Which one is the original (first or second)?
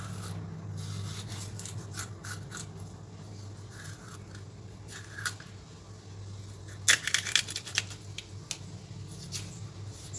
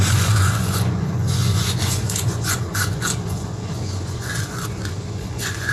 first